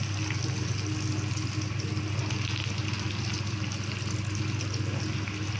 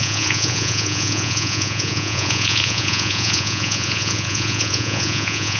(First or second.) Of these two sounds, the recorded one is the first